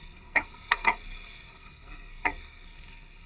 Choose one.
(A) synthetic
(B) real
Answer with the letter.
A